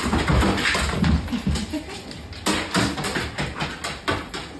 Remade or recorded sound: recorded